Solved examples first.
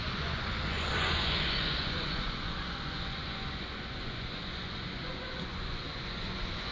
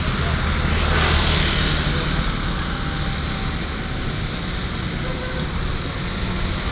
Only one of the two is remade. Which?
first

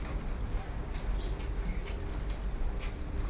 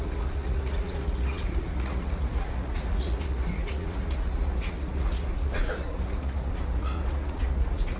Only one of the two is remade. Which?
second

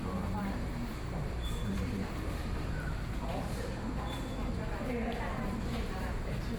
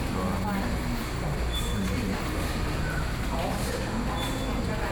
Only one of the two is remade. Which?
first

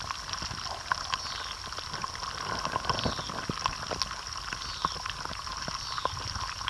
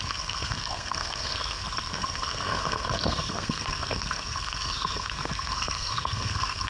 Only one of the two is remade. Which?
second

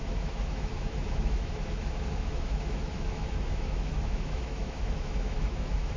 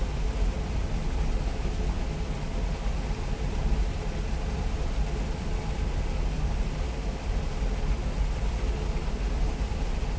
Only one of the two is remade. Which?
first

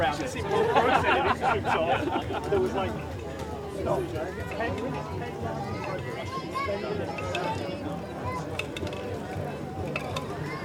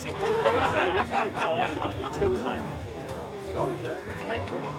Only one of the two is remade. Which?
second